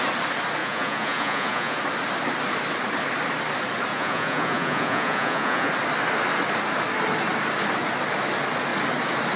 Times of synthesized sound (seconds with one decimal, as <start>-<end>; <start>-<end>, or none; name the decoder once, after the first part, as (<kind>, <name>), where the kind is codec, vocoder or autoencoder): 0.6-1.8 (vocoder, Vocos); 3.9-5.7